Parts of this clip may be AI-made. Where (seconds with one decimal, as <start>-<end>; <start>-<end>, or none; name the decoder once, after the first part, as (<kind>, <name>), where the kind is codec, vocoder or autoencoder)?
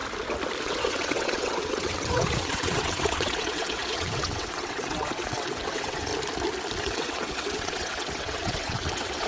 0.6-6.1 (vocoder, WaveNeXt); 6.8-9.3